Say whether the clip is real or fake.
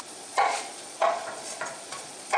fake